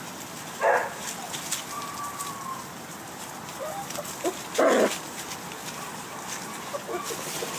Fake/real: real